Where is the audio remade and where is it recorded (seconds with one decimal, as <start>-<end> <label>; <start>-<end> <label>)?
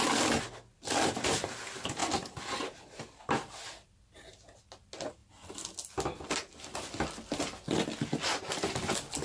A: 0.0-9.2 recorded